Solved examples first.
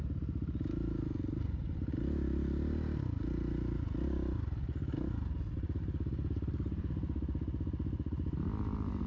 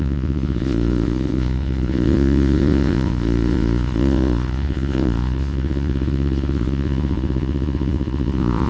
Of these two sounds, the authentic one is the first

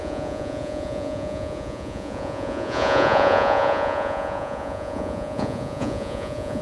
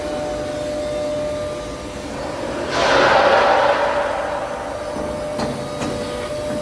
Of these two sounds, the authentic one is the second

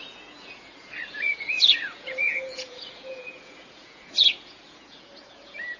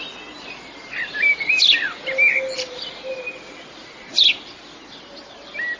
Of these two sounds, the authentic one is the second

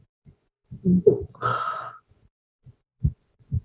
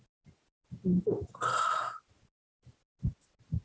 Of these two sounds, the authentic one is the second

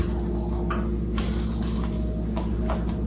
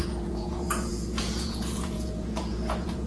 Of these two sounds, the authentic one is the first